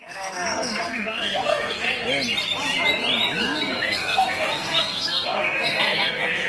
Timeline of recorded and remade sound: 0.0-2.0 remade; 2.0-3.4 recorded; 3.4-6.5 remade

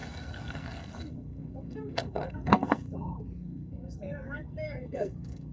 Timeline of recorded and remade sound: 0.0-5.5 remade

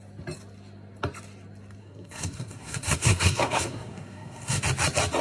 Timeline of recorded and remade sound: 0.0-1.8 recorded; 1.8-4.6 remade; 4.6-5.2 recorded

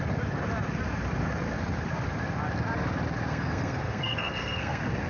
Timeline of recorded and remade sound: 0.0-3.3 recorded; 3.3-5.1 remade

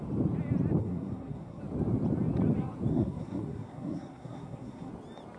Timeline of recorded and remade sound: 0.0-0.8 recorded; 0.8-1.6 remade; 1.6-2.9 recorded; 2.9-4.9 remade; 4.9-5.4 recorded